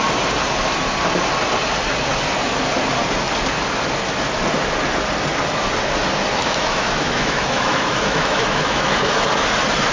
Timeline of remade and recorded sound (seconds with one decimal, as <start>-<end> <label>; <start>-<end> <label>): 0.0-6.4 recorded; 6.4-9.1 remade; 9.1-9.9 recorded